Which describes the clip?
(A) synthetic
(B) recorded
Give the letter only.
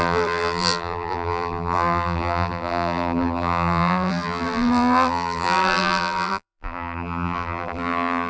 A